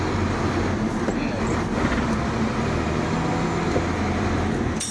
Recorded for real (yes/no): yes